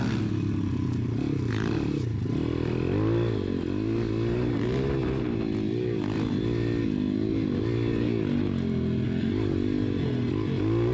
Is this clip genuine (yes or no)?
yes